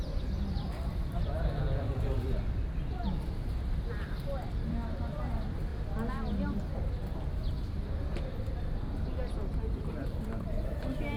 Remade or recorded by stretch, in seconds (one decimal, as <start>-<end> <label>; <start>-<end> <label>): 0.0-5.7 remade; 5.7-9.0 recorded; 9.0-11.2 remade